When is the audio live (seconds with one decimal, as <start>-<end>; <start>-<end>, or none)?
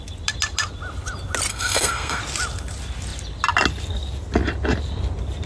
0.0-1.5; 2.2-5.5